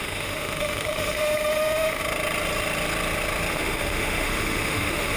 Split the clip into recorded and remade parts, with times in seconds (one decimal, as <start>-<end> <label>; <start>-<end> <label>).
0.0-2.0 remade; 2.0-3.5 recorded; 3.5-5.2 remade